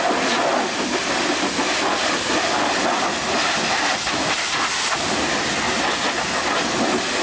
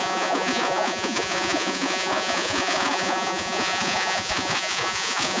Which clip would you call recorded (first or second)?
first